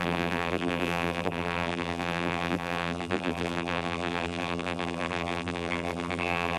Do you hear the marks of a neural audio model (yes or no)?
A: yes